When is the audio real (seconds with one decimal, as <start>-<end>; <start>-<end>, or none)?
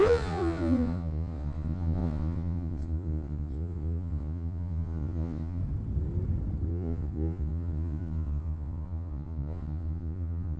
5.6-6.7